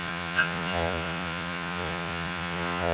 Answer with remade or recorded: remade